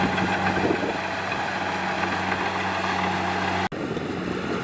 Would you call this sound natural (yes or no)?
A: yes